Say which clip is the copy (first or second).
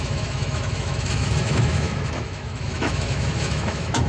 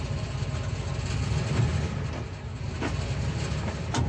first